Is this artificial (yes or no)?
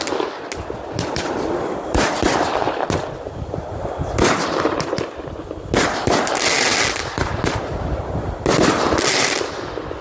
no